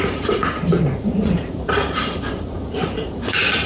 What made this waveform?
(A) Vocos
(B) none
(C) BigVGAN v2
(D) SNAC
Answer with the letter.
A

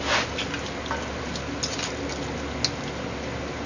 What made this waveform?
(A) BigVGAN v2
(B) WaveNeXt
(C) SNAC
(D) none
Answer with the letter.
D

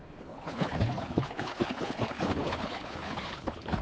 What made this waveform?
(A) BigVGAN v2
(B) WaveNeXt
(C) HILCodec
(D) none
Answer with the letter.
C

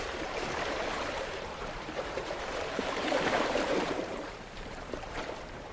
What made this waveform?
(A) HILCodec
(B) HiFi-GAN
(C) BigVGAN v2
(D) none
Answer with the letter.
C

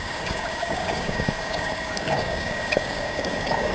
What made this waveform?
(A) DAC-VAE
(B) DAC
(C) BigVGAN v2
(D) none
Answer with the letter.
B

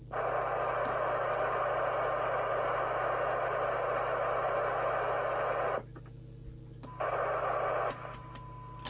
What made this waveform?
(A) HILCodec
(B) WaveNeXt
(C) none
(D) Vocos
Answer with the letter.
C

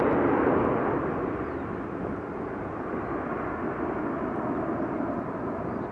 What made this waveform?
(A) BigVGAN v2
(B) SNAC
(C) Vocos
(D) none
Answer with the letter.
D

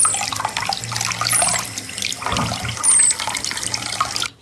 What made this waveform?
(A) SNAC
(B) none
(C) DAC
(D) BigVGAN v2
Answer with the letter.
B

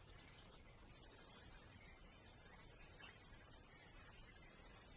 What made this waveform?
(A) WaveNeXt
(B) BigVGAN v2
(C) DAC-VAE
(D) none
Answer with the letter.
B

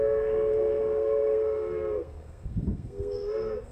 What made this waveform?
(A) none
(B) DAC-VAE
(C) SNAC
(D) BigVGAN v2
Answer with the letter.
C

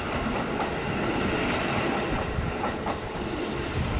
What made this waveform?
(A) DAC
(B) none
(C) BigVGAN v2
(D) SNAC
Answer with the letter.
B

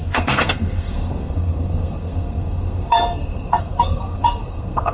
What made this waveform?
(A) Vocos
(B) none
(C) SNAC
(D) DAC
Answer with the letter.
C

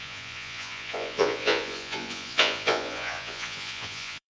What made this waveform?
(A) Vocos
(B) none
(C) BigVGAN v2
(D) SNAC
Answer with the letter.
A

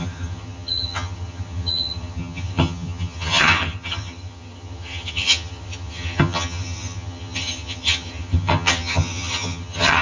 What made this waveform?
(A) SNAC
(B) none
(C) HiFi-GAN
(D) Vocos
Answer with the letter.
C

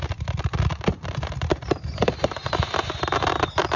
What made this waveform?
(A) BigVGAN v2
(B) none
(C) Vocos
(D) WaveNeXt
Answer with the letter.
A